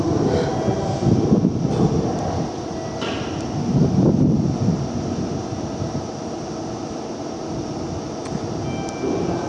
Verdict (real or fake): real